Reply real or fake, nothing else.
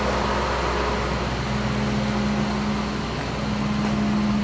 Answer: real